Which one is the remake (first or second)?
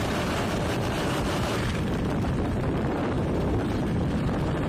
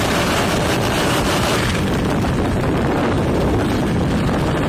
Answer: first